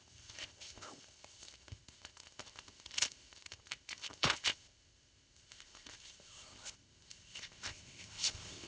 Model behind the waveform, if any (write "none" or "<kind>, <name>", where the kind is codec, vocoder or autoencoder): codec, ZipCodec